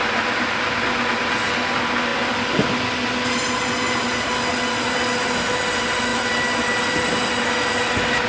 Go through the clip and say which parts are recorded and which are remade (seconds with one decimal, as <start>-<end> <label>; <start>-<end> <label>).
0.0-8.3 recorded